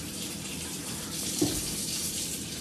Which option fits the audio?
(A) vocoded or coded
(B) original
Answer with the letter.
A